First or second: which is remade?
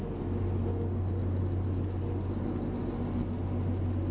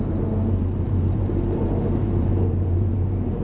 second